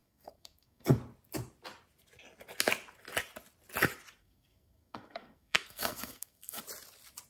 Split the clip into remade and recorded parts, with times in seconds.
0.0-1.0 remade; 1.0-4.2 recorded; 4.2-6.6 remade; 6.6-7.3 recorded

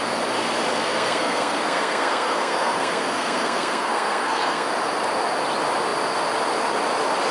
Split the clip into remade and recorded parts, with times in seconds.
0.0-0.8 recorded; 0.8-4.7 remade; 4.7-7.3 recorded

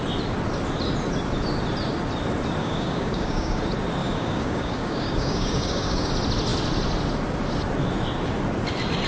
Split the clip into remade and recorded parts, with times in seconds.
0.0-2.6 recorded; 2.6-3.6 remade; 3.6-4.0 recorded; 4.0-6.1 remade; 6.1-9.1 recorded

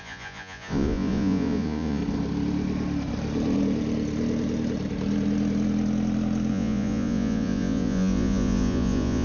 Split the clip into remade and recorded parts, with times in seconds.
0.0-2.0 remade; 2.0-6.5 recorded; 6.5-9.2 remade

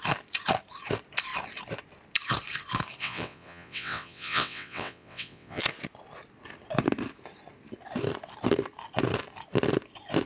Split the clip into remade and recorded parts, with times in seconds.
0.0-3.0 recorded; 3.0-5.6 remade; 5.6-10.3 recorded

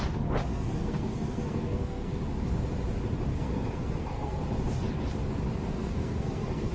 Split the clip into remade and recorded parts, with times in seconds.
0.0-0.5 recorded; 0.5-2.2 remade; 2.2-3.3 recorded; 3.3-4.4 remade; 4.4-5.8 recorded; 5.8-6.7 remade